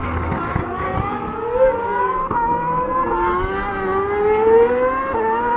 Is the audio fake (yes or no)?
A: no